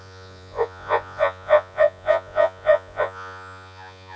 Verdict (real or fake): fake